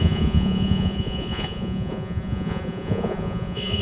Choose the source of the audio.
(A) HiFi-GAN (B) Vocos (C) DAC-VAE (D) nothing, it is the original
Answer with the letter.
B